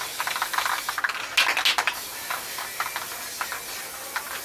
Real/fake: real